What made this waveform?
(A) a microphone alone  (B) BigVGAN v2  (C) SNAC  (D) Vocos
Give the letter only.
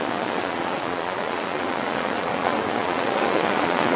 D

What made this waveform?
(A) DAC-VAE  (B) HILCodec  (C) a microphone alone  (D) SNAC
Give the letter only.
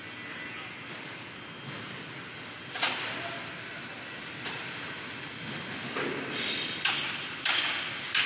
C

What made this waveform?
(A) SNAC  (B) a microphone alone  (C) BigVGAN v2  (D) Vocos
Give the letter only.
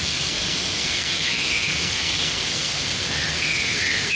A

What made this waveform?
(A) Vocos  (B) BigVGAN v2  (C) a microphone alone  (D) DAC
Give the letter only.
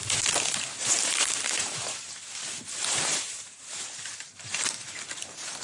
B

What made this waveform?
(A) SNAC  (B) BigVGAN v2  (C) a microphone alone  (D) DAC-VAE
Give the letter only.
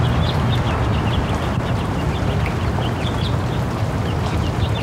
C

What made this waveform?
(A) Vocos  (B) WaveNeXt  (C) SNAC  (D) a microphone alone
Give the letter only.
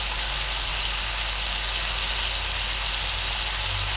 D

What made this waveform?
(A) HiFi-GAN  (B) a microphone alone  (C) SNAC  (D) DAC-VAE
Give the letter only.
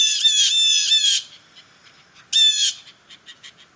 B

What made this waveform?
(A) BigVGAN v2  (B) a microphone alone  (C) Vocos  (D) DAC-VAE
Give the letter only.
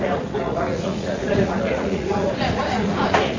C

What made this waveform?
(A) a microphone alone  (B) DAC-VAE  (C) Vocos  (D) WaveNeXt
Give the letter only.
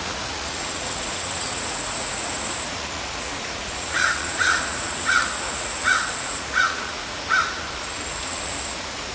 C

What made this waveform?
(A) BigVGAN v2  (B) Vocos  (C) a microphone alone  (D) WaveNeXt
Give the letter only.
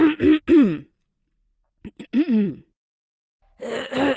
C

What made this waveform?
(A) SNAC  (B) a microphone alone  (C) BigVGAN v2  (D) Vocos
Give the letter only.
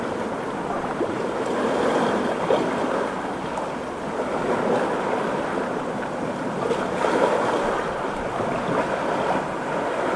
B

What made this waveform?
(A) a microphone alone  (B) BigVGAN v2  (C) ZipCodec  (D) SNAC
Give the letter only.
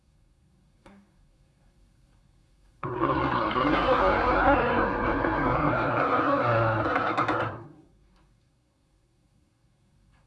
D